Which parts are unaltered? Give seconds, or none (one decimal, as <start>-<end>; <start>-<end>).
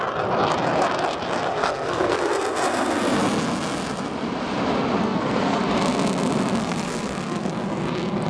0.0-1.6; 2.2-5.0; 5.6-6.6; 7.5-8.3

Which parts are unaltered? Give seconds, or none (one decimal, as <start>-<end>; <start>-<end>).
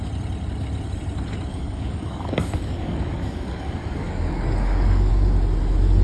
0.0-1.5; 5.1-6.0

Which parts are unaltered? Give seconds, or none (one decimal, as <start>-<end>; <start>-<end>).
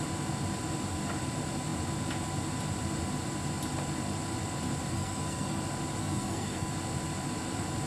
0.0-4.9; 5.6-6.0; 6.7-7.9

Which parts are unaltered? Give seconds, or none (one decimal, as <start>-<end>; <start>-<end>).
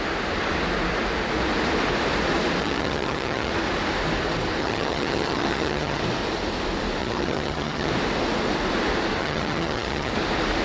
0.0-2.6; 3.5-4.6; 6.0-7.0; 7.9-9.2; 10.1-10.6